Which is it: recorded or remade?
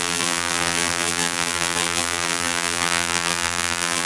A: remade